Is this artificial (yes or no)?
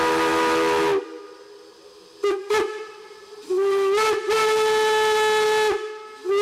no